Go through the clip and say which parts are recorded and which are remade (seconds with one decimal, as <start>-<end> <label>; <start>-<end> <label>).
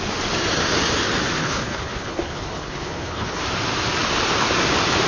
0.0-1.4 recorded; 1.4-3.4 remade; 3.4-5.1 recorded